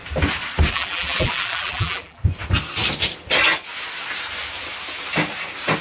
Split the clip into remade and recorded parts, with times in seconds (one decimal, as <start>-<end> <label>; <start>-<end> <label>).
0.0-0.7 recorded; 0.7-2.2 remade; 2.2-5.8 recorded

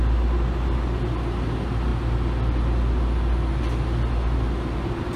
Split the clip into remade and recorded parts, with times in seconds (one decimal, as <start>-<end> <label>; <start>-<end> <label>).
0.0-5.2 recorded

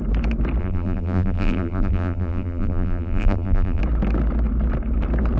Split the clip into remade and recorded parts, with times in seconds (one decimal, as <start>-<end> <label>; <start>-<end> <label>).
0.0-0.6 recorded; 0.6-3.8 remade; 3.8-5.4 recorded

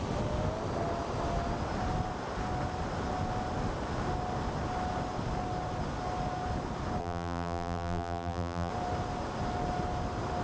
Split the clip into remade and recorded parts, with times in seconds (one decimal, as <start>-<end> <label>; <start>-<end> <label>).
0.0-7.0 recorded; 7.0-8.7 remade; 8.7-10.4 recorded